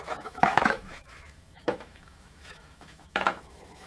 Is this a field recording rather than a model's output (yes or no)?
no